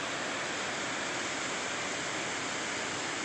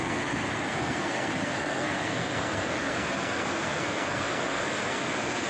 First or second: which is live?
first